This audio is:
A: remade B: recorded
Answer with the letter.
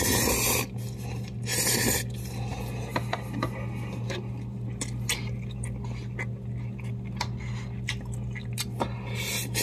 B